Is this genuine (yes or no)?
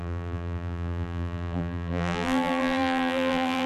no